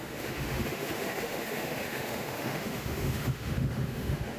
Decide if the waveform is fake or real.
fake